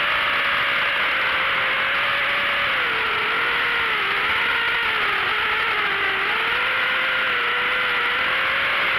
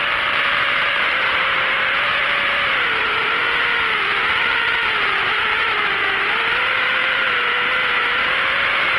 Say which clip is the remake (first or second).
second